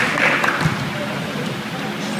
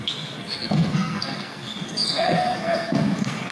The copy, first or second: second